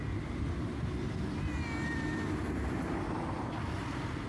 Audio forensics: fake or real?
real